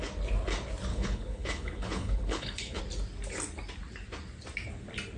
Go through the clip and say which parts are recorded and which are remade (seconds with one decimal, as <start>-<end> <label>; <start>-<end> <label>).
0.0-0.9 recorded; 0.9-2.8 remade; 2.8-5.2 recorded